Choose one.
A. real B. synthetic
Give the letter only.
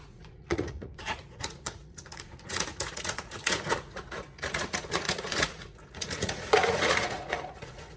B